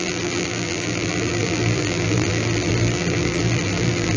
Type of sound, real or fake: fake